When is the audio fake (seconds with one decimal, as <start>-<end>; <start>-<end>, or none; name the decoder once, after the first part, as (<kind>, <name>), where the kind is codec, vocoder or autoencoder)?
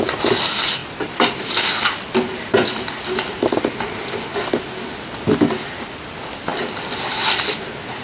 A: none